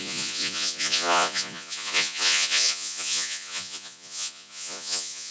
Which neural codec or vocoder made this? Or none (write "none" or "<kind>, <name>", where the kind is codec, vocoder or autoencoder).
vocoder, Vocos